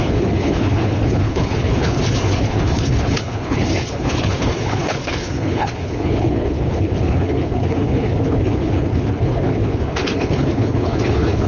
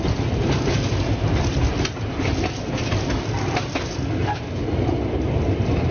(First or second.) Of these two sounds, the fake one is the first